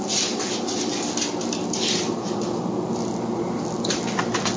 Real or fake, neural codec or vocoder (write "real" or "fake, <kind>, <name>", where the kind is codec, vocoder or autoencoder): real